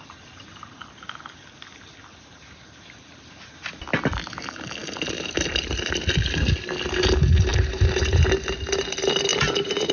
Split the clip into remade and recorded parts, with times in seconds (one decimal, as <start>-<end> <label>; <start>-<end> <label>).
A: 0.0-7.5 recorded; 7.5-8.3 remade; 8.3-9.3 recorded; 9.3-9.9 remade